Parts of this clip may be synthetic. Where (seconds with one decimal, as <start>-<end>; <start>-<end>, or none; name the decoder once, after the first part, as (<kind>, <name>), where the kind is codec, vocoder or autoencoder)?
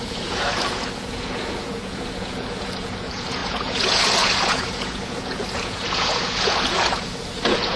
0.0-7.8 (vocoder, Vocos)